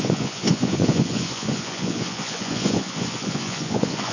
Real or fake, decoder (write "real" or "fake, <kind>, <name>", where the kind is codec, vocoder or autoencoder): fake, vocoder, Vocos